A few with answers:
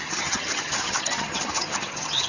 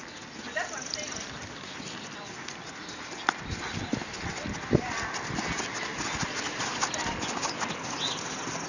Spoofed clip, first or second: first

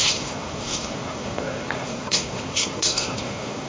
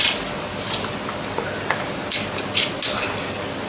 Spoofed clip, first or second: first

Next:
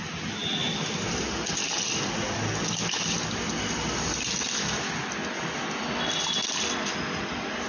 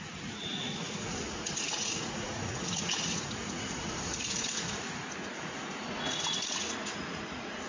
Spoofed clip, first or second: second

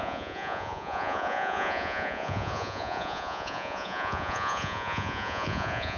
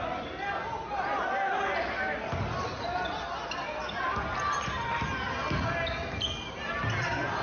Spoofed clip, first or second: first